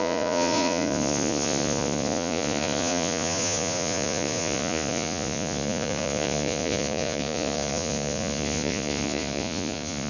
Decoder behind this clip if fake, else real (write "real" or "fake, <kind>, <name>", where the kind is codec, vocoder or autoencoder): fake, vocoder, Vocos